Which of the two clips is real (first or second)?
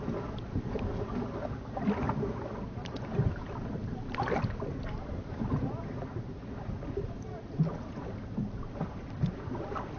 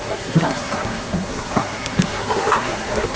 first